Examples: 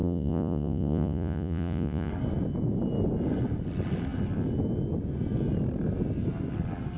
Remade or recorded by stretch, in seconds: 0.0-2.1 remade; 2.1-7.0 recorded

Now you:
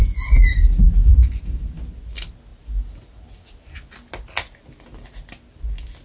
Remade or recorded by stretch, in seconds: 0.0-6.0 recorded

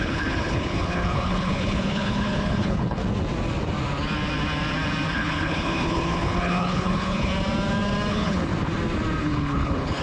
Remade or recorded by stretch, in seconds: 0.0-3.0 remade; 3.0-5.1 recorded; 5.1-7.3 remade; 7.3-8.1 recorded; 8.1-8.5 remade; 8.5-9.2 recorded; 9.2-10.0 remade

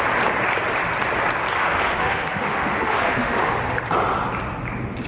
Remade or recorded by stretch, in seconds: 0.0-1.6 recorded; 1.6-3.5 remade; 3.5-5.1 recorded

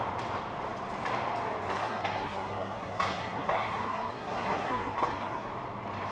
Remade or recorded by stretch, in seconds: 0.0-1.8 recorded; 1.8-5.5 remade; 5.5-6.1 recorded